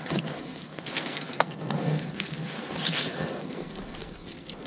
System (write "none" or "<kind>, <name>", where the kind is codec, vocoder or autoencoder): codec, SNAC